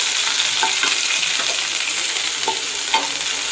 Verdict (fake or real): real